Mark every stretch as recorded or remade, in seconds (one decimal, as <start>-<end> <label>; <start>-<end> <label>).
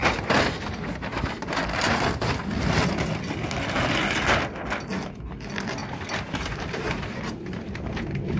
0.0-1.2 remade; 1.2-5.8 recorded; 5.8-8.4 remade